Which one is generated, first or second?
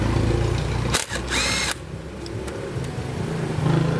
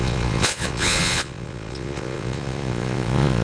second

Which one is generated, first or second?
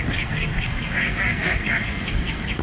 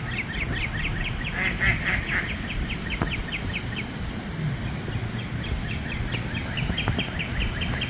first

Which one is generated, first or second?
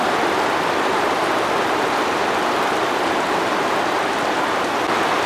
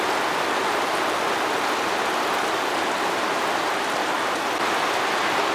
first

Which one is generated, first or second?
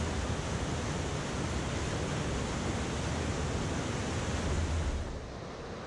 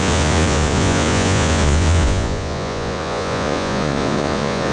second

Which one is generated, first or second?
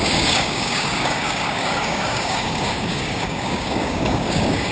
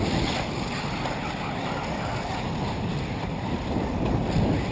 first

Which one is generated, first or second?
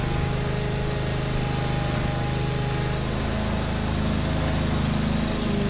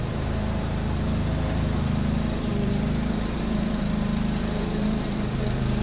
second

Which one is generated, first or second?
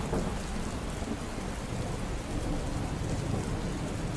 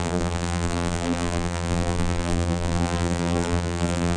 second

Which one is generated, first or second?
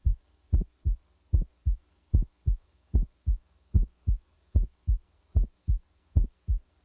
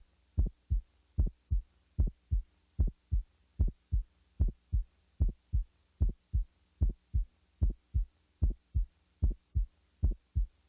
first